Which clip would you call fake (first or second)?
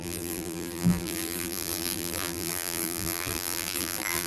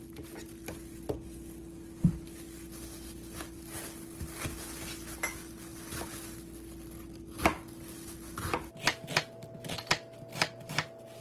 first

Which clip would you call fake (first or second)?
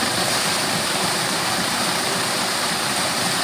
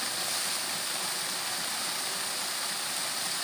first